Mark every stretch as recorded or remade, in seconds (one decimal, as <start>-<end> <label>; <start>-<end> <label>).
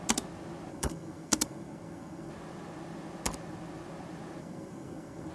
0.0-0.7 recorded; 0.7-2.3 remade; 2.3-4.4 recorded; 4.4-5.3 remade